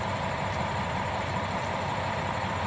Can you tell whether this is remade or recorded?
recorded